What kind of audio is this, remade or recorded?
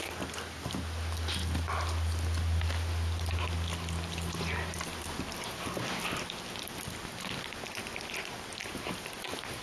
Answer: recorded